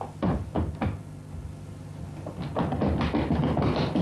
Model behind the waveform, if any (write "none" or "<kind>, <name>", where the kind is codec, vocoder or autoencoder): none